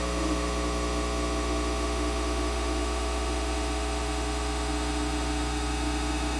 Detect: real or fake fake